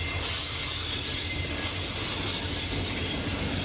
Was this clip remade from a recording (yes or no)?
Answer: no